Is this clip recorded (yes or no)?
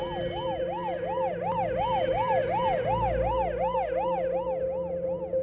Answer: yes